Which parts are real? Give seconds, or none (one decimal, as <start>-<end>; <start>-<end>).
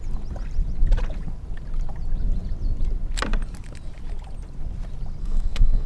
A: 0.0-5.2